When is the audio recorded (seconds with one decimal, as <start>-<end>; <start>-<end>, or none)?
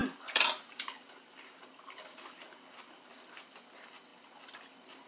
3.1-5.1